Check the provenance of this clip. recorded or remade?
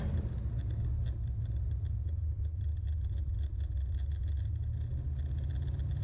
recorded